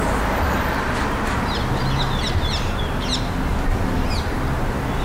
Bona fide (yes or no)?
yes